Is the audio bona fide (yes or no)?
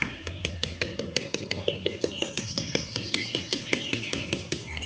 no